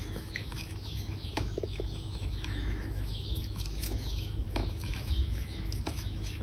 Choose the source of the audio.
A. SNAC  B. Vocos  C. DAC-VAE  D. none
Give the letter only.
C